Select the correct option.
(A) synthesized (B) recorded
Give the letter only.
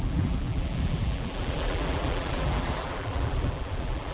A